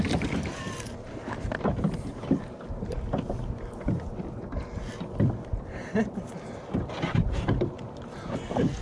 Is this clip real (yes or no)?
yes